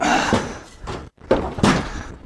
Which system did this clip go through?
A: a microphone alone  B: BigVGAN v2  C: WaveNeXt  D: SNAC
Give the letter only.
B